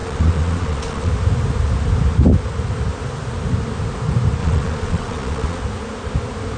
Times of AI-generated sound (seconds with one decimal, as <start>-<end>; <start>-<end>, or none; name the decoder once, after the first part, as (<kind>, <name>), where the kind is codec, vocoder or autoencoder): 0.0-1.1 (vocoder, Vocos); 4.4-5.6